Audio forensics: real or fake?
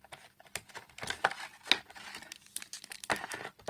real